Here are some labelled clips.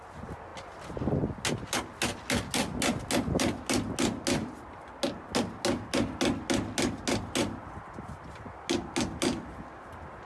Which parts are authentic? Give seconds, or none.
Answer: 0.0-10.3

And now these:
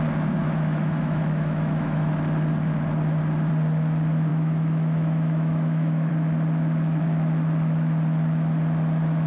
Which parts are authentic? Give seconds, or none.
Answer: 0.0-0.4; 2.1-4.3; 6.1-9.3

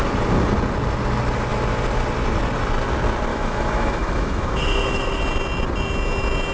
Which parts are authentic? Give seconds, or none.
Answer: 0.0-3.3; 5.2-6.5

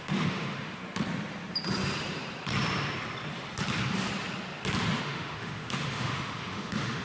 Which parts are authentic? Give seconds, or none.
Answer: 0.8-5.0

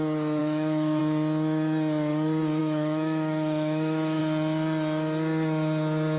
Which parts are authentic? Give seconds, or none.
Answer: 0.0-0.4; 1.0-2.6; 4.2-6.2